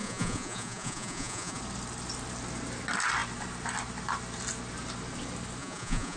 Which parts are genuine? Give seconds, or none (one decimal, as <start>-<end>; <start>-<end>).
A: 1.6-5.6